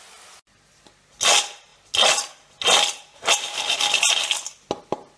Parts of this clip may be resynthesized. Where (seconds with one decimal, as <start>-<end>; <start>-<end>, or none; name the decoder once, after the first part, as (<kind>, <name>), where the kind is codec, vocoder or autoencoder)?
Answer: none